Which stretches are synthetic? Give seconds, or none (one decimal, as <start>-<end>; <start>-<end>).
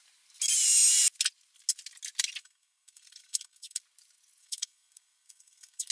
2.4-3.8; 4.4-5.9